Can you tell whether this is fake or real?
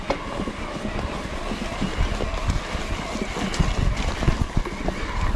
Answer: real